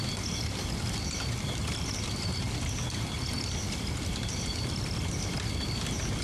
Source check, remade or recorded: recorded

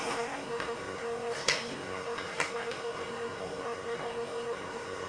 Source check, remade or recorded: remade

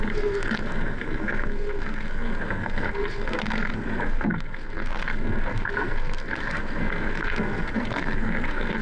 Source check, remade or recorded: remade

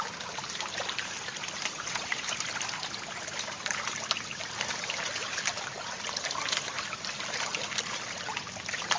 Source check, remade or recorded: recorded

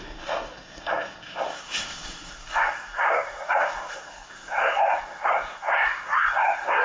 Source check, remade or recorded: remade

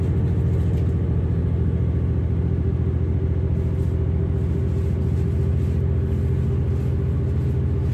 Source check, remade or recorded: recorded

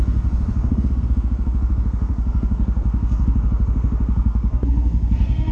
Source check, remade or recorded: remade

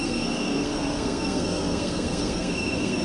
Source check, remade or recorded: remade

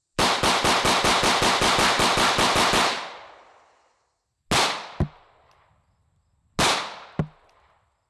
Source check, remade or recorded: recorded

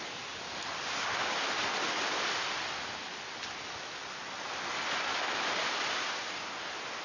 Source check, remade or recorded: recorded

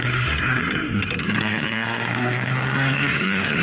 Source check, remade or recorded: remade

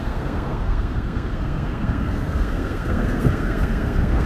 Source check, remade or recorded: remade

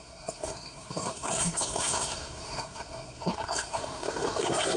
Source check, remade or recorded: remade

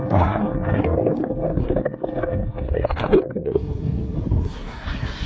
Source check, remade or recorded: remade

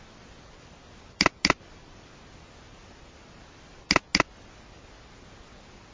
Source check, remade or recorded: recorded